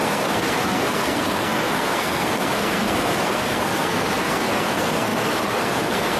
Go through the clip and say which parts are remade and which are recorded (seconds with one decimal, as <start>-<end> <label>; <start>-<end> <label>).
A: 0.0-6.2 remade